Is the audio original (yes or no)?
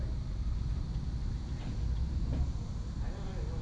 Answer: no